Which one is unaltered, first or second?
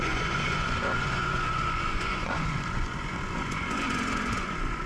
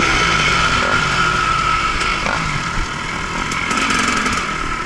second